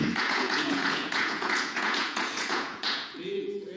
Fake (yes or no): yes